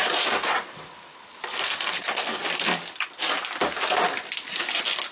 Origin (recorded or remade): recorded